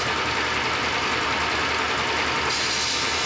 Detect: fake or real real